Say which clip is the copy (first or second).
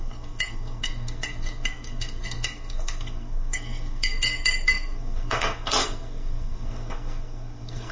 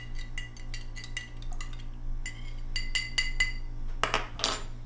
first